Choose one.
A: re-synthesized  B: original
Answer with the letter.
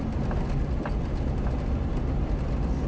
B